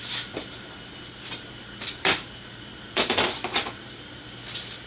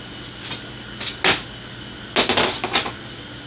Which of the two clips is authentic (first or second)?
second